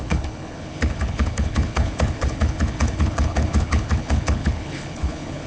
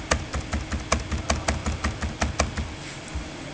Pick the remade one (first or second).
first